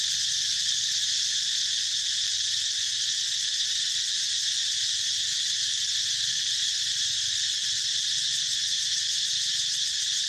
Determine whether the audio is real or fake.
real